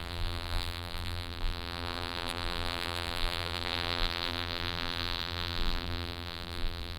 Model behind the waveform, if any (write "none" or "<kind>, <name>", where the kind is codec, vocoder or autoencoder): vocoder, BigVGAN v2